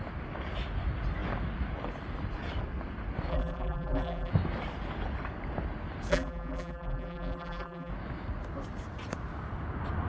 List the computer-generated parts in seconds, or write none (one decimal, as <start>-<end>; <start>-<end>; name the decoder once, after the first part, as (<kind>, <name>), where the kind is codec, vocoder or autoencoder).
3.3-4.3 (vocoder, BigVGAN v2); 6.1-7.9